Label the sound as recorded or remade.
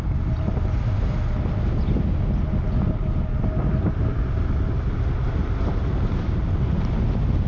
recorded